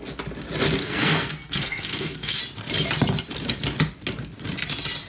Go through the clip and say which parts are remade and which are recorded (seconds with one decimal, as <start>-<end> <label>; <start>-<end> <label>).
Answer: 0.0-0.8 recorded; 0.8-2.4 remade; 2.4-5.1 recorded